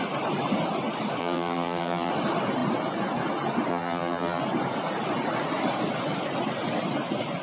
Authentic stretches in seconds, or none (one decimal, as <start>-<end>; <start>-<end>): 0.0-1.2; 2.1-3.7; 4.4-7.4